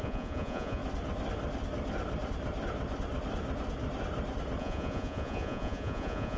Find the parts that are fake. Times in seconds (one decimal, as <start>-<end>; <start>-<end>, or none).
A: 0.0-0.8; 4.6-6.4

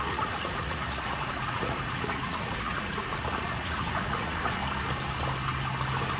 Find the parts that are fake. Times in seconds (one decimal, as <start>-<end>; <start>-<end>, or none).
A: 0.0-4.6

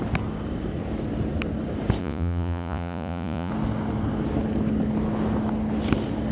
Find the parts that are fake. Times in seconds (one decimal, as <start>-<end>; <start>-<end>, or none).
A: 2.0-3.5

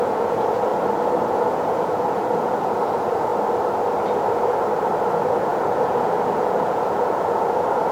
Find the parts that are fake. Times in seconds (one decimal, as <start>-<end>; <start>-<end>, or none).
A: 0.0-0.7; 1.3-3.3; 5.1-7.9

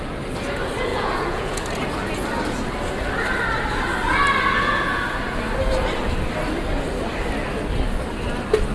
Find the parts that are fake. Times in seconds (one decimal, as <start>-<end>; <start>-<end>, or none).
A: 0.9-1.6; 4.6-5.4

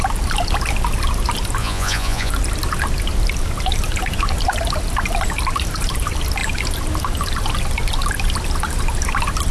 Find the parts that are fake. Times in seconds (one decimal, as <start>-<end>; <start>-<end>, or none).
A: 1.6-2.3